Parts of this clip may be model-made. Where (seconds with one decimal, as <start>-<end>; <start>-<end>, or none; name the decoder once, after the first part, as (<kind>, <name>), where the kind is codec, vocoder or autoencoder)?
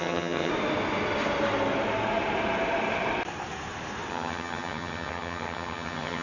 0.0-0.5 (vocoder, HiFi-GAN); 4.1-6.2